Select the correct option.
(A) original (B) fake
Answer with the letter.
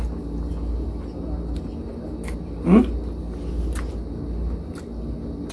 A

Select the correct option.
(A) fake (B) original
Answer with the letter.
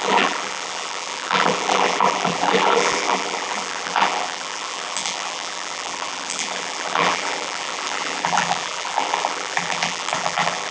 A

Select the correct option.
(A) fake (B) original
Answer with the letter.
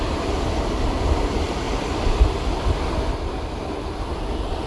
B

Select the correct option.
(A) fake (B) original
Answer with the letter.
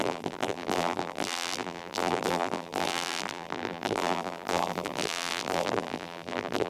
A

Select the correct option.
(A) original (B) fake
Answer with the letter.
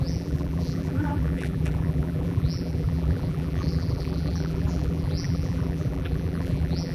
B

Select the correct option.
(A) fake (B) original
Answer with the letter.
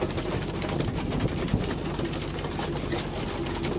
B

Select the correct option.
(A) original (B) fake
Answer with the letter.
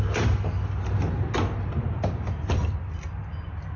A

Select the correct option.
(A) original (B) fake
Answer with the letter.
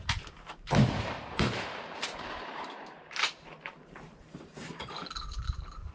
B